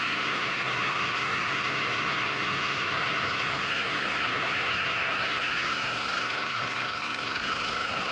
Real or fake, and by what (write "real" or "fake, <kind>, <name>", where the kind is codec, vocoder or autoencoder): fake, codec, SNAC